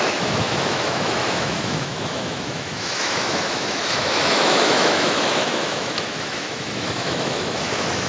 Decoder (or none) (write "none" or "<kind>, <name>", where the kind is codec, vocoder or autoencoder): autoencoder, DAC-VAE